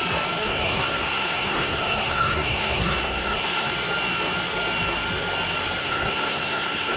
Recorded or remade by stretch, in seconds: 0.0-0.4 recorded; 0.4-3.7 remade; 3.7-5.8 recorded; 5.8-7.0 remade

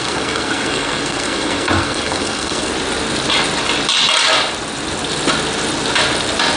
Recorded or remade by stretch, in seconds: 0.0-2.7 remade; 2.7-6.6 recorded

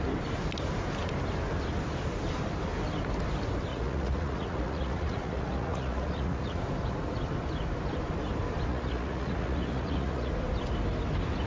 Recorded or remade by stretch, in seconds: 0.0-3.7 recorded; 3.7-6.6 remade; 6.6-8.7 recorded; 8.7-10.3 remade; 10.3-11.5 recorded